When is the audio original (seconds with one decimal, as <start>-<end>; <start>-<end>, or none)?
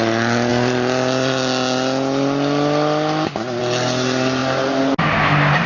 0.0-5.7